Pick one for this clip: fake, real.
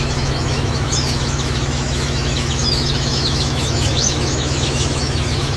fake